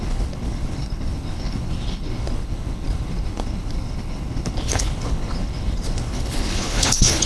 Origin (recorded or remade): remade